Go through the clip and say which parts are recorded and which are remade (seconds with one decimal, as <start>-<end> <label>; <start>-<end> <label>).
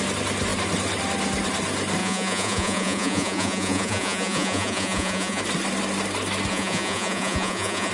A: 0.0-2.0 recorded; 2.0-5.4 remade; 5.4-6.5 recorded; 6.5-7.9 remade